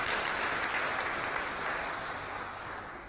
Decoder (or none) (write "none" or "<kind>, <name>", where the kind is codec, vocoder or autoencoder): none